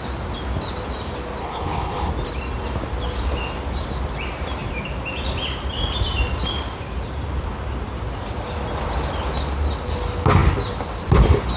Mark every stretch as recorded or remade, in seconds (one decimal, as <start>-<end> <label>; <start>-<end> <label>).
0.0-1.4 recorded; 1.4-2.1 remade; 2.1-11.6 recorded